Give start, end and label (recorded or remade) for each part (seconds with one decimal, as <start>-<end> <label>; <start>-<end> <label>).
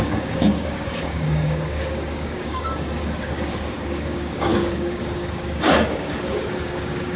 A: 0.0-7.2 remade